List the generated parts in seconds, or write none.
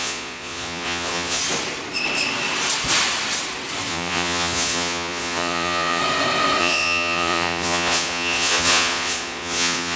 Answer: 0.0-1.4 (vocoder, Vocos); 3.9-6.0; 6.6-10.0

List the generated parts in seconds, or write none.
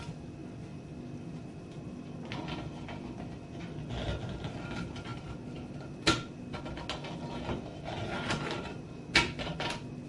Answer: none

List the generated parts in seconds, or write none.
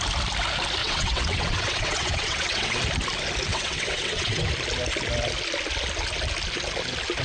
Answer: 0.8-2.8 (vocoder, WaveNeXt); 3.5-4.5